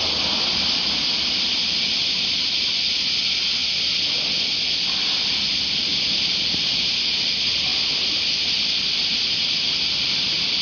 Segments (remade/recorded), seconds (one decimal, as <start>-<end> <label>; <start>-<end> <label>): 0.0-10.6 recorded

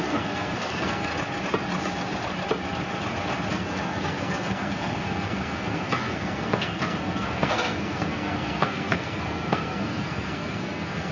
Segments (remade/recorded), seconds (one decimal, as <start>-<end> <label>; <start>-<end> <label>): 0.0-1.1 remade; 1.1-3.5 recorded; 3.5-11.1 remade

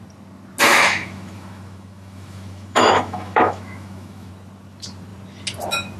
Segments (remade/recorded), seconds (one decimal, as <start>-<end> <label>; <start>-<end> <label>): 0.0-0.7 recorded; 0.7-4.3 remade; 4.3-6.0 recorded

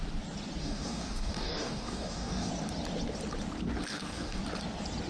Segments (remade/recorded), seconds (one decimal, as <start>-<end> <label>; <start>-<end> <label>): 0.0-0.6 recorded; 0.6-2.5 remade; 2.5-3.9 recorded; 3.9-4.4 remade; 4.4-5.1 recorded